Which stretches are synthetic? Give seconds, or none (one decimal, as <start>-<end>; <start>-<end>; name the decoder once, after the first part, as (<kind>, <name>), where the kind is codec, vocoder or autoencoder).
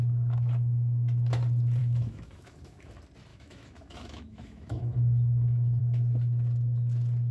1.8-2.9 (autoencoder, DAC-VAE); 3.3-5.8